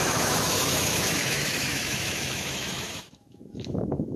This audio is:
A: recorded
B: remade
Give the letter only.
B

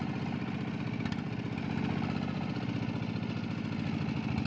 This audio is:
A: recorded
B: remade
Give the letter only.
A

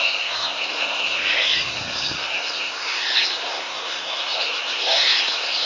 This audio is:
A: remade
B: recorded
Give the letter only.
A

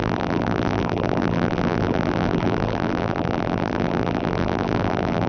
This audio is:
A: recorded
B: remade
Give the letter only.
B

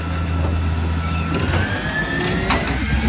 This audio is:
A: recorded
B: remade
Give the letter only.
A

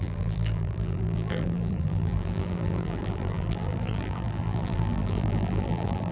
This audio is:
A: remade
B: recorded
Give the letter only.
A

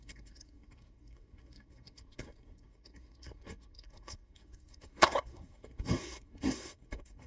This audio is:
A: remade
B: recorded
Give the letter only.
A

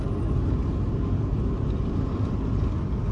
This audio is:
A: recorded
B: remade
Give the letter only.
A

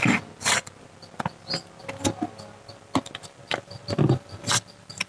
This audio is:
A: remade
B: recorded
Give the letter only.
B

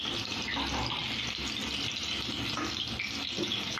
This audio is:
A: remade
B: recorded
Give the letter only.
B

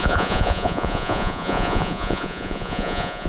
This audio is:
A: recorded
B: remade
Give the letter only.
B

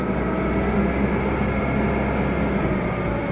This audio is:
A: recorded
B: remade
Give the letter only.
A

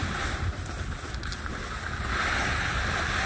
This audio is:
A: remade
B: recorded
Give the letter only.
B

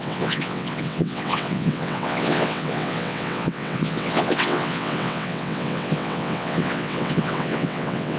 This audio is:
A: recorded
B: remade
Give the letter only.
B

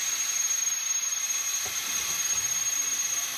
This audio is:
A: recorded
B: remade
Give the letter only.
B